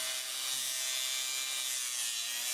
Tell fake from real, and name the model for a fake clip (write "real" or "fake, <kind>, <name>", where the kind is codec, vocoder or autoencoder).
real